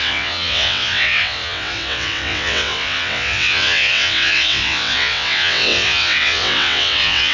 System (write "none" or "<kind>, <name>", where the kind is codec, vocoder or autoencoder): vocoder, WaveNeXt